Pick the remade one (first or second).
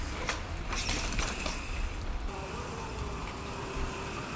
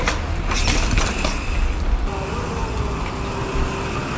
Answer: first